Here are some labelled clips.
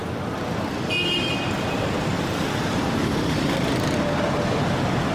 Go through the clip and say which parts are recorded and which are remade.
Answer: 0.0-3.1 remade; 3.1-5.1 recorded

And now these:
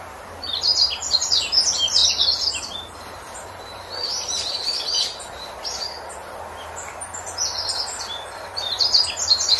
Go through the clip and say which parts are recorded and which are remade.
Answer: 0.0-9.6 recorded

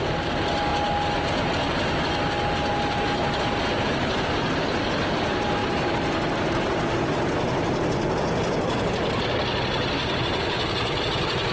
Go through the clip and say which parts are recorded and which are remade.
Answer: 0.0-5.6 recorded; 5.6-6.3 remade; 6.3-11.5 recorded

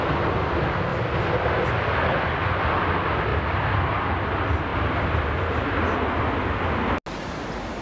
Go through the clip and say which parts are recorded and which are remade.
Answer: 0.0-3.3 recorded; 3.3-3.9 remade; 3.9-7.8 recorded

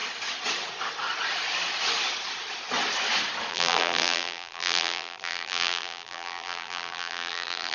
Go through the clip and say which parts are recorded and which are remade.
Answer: 0.0-3.5 recorded; 3.5-7.7 remade

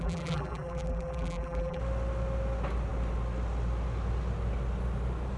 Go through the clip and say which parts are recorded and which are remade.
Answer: 0.0-1.8 remade; 1.8-5.4 recorded

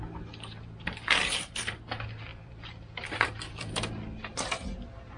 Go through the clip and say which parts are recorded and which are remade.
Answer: 0.0-2.3 recorded; 2.3-3.7 remade; 3.7-5.2 recorded

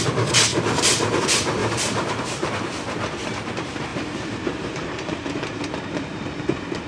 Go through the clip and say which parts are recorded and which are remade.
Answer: 0.0-0.5 recorded; 0.5-1.2 remade; 1.2-1.6 recorded; 1.6-2.5 remade; 2.5-3.9 recorded; 3.9-6.9 remade